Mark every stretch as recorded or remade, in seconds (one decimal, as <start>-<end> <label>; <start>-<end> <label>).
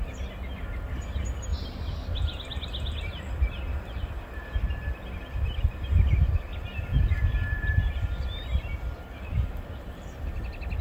0.0-1.5 recorded; 1.5-3.0 remade; 3.0-10.8 recorded